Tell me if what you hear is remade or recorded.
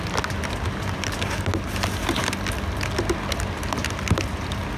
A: recorded